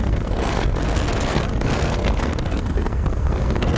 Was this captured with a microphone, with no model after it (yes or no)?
no